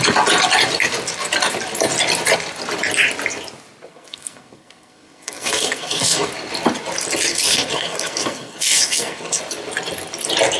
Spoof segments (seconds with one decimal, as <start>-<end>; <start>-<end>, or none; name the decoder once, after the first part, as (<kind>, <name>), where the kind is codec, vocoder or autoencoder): 3.9-6.3 (codec, SNAC); 7.3-9.4